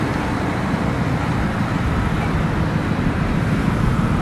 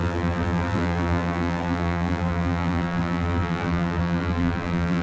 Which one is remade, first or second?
second